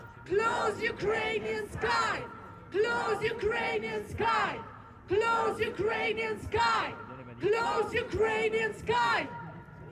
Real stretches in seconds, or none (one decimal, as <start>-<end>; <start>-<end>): 0.0-6.7; 7.6-9.9